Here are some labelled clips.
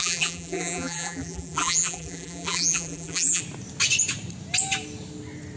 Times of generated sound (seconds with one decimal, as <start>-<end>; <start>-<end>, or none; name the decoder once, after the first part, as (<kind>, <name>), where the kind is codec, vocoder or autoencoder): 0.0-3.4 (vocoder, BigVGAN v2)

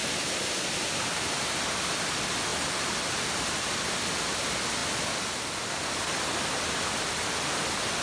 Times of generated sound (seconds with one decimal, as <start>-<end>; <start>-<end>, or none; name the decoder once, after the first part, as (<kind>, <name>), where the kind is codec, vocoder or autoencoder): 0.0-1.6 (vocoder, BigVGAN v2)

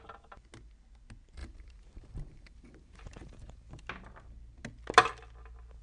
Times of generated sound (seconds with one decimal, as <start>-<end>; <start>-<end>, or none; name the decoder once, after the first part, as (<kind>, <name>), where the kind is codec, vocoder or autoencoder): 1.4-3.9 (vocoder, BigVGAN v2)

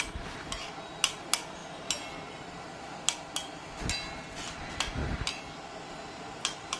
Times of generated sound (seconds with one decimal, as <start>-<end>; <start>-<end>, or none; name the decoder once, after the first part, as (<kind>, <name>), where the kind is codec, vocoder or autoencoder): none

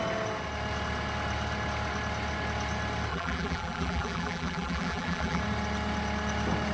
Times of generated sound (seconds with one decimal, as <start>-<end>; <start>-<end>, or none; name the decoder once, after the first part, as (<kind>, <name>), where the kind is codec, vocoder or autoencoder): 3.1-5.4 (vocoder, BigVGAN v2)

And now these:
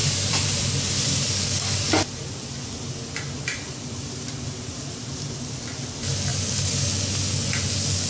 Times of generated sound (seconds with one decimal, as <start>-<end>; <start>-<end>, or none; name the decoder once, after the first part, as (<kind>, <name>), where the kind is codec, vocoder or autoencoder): 0.0-1.1 (vocoder, BigVGAN v2); 3.5-5.6; 6.3-6.9